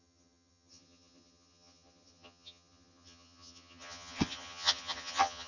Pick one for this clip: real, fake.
fake